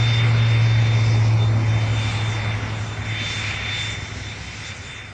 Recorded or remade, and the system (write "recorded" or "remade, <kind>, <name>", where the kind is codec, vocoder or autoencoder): recorded